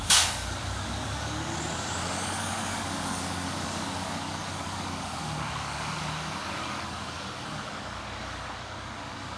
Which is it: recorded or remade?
remade